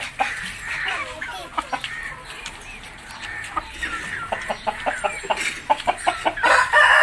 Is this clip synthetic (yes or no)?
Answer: no